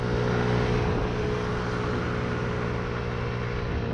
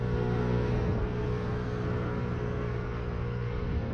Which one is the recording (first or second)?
first